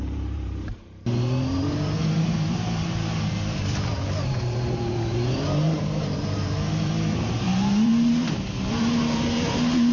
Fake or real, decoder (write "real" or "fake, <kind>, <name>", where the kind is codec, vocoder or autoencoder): fake, vocoder, BigVGAN v2